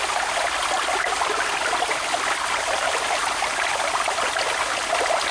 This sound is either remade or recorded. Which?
recorded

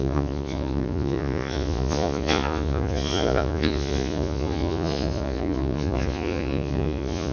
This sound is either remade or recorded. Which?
remade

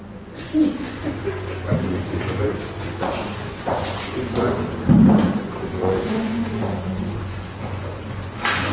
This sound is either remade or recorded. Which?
remade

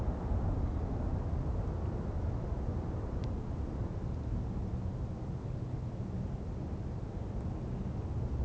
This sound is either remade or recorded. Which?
recorded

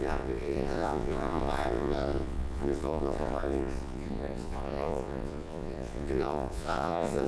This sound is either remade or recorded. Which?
remade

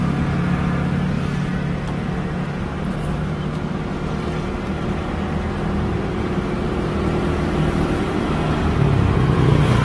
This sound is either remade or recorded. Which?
recorded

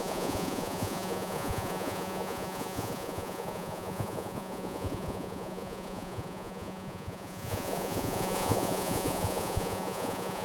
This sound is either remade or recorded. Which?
remade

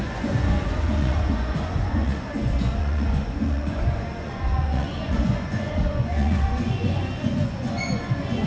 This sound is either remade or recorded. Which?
remade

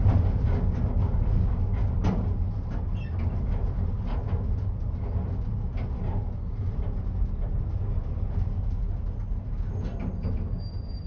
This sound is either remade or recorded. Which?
recorded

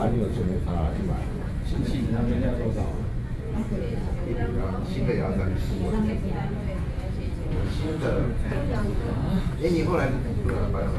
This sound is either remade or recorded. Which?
remade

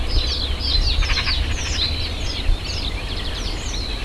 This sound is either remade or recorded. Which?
recorded